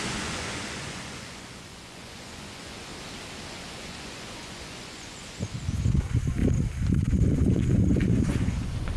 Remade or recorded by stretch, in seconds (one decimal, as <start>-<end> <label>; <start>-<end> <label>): 0.0-2.9 remade; 2.9-3.5 recorded; 3.5-6.4 remade; 6.4-7.0 recorded; 7.0-9.0 remade